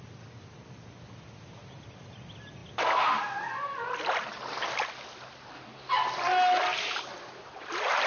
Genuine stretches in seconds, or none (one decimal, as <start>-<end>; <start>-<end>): 0.0-8.1